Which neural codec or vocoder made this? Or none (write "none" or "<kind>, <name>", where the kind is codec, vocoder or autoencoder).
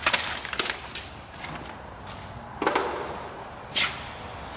none